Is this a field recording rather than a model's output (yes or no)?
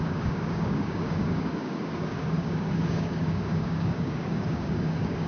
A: no